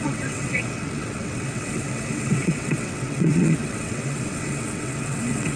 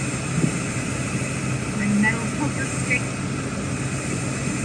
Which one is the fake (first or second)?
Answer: first